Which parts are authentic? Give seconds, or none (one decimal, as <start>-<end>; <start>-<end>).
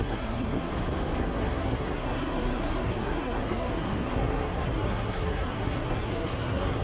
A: 0.7-1.2